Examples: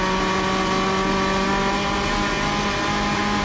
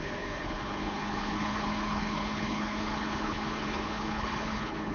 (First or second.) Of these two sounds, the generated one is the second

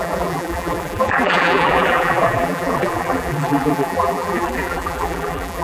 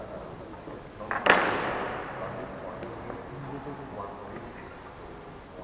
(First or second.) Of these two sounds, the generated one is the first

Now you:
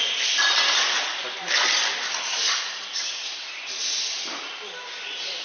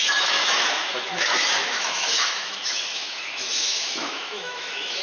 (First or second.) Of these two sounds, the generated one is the second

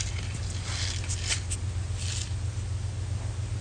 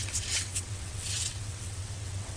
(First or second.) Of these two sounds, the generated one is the second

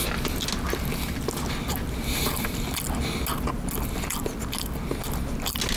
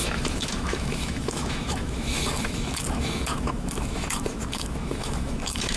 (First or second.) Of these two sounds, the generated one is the second